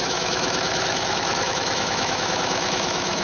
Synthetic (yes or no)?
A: yes